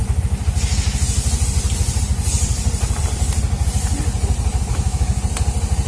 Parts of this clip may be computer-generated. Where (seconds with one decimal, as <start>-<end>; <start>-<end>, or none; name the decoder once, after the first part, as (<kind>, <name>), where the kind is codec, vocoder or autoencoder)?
4.7-5.2 (autoencoder, DAC-VAE)